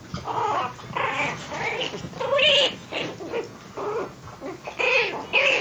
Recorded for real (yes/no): yes